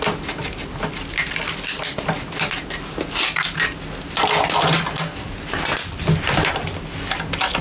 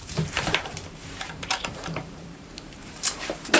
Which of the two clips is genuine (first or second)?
first